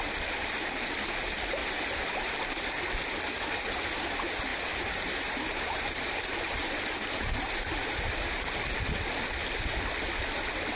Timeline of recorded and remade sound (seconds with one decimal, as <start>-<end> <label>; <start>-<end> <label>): 0.0-1.6 recorded; 1.6-2.6 remade; 2.6-4.5 recorded; 4.5-8.5 remade; 8.5-10.8 recorded